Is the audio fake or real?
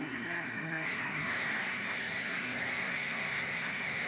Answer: fake